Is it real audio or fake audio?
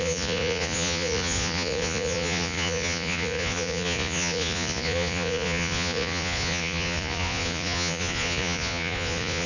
fake